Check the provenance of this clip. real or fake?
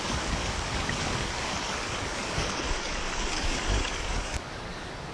fake